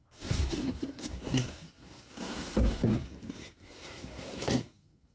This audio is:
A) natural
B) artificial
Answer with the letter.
B